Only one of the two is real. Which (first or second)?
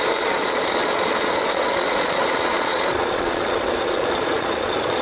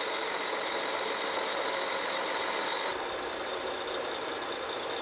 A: second